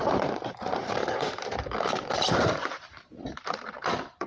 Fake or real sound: fake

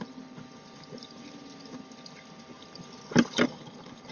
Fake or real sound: real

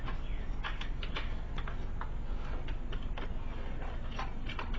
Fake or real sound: real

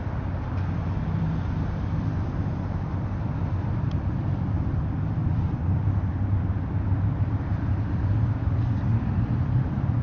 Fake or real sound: fake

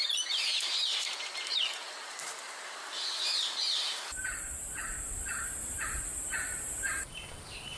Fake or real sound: fake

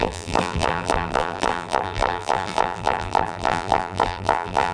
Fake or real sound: fake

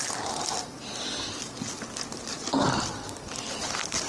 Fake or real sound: real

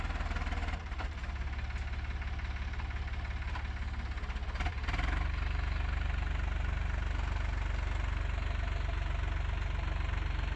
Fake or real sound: real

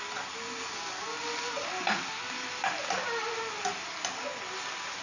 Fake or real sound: real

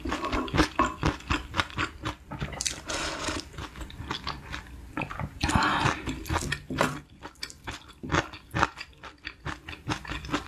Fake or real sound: real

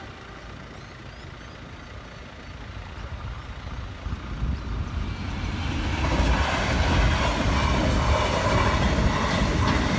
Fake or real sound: real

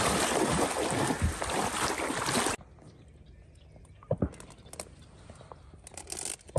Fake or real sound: real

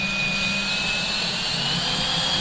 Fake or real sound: real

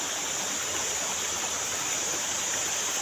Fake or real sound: real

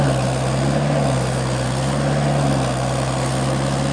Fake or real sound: real